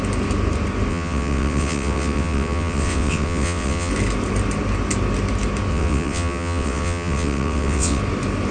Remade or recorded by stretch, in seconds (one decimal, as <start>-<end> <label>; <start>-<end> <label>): 0.0-0.9 recorded; 0.9-3.9 remade; 3.9-5.7 recorded; 5.7-8.0 remade; 8.0-8.5 recorded